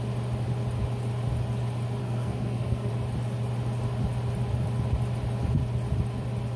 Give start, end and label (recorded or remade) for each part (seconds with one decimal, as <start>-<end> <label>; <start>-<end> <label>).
0.0-2.0 recorded; 2.0-2.9 remade; 2.9-6.6 recorded